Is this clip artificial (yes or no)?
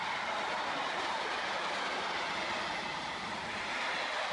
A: no